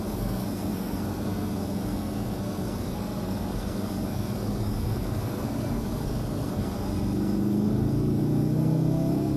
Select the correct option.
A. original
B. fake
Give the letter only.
B